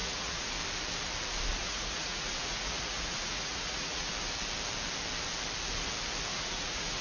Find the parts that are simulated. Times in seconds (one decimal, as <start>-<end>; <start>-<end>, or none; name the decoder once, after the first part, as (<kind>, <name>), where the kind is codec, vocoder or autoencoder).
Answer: 0.0-0.5 (vocoder, Vocos); 1.6-4.1; 6.3-7.0